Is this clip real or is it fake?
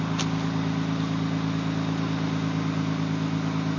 real